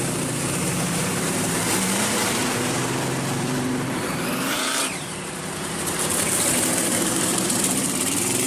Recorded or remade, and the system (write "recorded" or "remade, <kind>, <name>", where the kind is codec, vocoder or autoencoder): remade, vocoder, BigVGAN v2